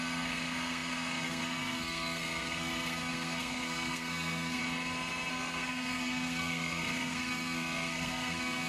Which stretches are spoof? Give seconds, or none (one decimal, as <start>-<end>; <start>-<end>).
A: 0.0-4.6; 5.3-8.7